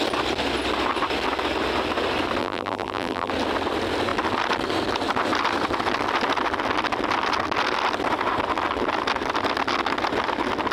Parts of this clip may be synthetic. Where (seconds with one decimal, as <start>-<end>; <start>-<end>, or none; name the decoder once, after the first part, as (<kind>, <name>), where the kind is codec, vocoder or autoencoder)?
2.4-3.3 (vocoder, BigVGAN v2)